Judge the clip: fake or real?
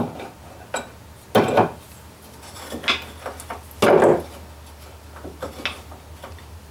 real